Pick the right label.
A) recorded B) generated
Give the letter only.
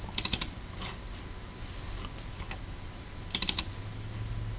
A